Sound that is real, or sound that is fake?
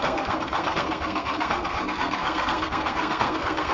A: fake